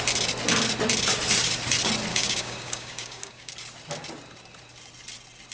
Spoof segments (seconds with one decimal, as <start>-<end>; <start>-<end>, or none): 2.1-3.5